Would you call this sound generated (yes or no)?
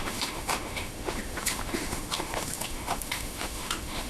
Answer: yes